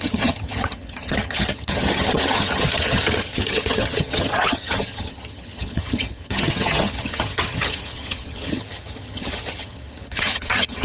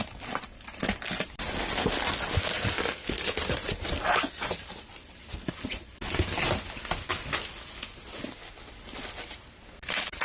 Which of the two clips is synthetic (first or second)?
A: first